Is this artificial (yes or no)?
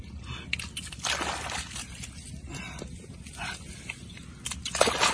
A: no